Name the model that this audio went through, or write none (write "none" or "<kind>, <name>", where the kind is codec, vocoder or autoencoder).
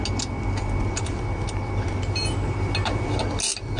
none